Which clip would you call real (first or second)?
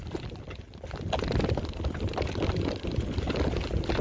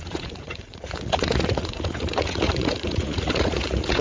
first